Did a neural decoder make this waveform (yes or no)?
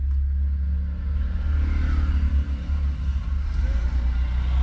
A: no